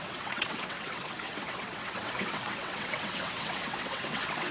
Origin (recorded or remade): remade